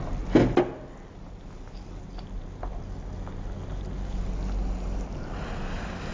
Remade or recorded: recorded